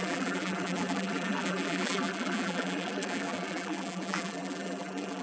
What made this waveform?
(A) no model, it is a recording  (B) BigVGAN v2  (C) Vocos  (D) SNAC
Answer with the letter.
B